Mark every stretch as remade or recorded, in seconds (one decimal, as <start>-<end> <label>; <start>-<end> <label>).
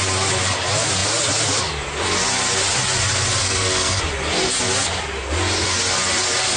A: 0.0-3.4 recorded; 3.4-4.0 remade; 4.0-6.6 recorded